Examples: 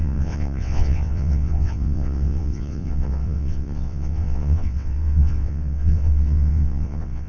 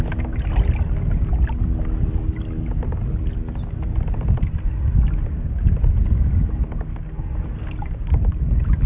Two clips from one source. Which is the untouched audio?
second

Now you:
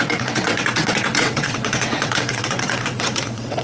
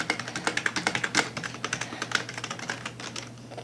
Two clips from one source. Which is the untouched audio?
second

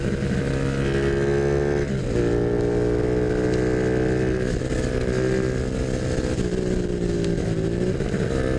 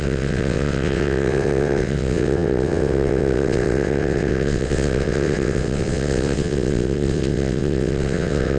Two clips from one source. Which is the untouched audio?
first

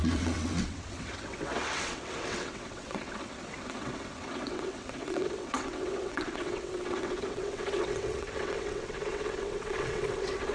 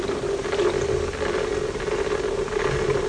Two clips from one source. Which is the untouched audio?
second